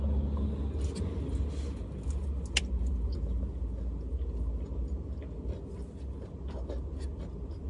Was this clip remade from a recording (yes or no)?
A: no